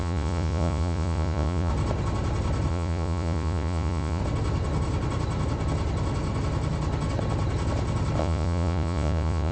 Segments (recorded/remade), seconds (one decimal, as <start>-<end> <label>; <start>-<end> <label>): 0.0-1.7 remade; 1.7-2.7 recorded; 2.7-4.2 remade; 4.2-8.2 recorded; 8.2-9.5 remade